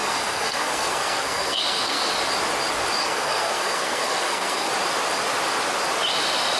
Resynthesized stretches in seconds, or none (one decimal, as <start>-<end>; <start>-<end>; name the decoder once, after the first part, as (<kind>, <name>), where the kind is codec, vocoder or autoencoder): 0.0-2.1 (codec, SNAC); 3.0-4.7

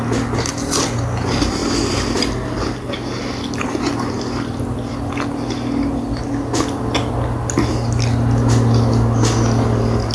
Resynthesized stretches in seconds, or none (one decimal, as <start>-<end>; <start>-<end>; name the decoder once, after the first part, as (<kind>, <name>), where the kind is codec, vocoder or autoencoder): none

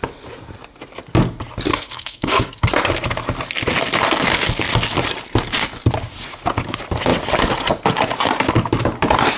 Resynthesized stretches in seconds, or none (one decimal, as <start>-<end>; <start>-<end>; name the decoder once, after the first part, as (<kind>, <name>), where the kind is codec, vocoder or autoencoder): 1.7-2.7 (codec, SNAC)